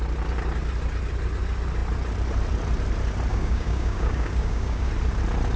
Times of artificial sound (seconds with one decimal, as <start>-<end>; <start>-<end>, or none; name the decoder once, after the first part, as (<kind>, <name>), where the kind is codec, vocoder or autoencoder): 3.3-4.9 (codec, DAC)